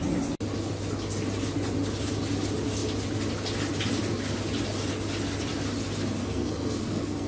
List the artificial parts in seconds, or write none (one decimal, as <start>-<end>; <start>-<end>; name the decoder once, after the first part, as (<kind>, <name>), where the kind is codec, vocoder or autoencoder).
6.2-7.3 (codec, SNAC)